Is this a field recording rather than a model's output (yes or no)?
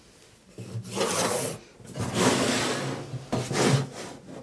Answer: yes